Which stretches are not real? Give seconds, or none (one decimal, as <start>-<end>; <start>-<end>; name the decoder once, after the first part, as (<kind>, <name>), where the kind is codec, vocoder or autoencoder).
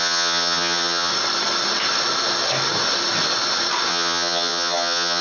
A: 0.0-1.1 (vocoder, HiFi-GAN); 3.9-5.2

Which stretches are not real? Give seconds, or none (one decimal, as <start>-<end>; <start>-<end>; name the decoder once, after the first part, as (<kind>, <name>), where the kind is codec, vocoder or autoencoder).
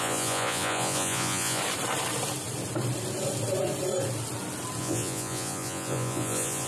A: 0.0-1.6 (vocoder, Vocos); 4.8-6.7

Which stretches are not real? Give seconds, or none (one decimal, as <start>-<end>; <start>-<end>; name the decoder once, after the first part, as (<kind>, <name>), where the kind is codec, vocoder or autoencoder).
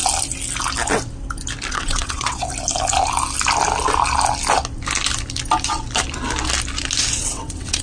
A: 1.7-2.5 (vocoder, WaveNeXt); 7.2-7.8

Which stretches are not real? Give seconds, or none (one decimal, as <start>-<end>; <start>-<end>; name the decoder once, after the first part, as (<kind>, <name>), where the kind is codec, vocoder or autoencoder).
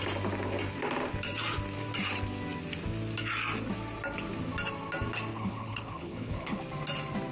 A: 5.3-6.6 (codec, HILCodec)